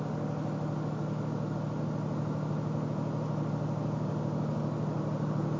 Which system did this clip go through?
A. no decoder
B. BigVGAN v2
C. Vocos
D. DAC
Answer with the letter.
A